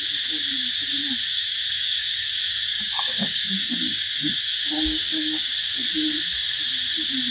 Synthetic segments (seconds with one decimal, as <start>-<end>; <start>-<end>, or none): 1.3-5.5